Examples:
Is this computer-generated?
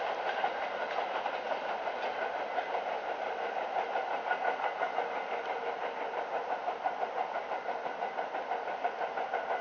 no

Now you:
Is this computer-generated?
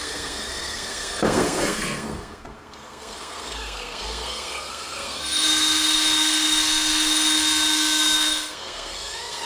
yes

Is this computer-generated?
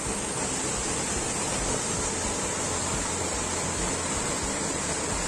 no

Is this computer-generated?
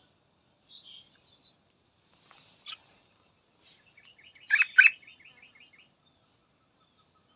no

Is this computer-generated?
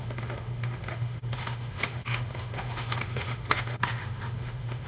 yes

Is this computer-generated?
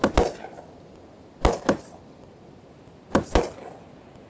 no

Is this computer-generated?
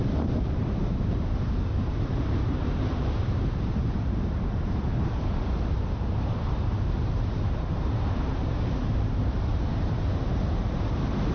yes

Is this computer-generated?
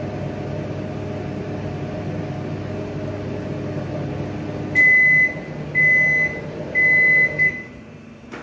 no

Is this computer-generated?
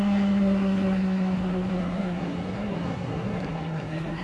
yes